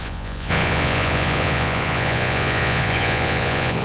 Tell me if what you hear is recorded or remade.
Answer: remade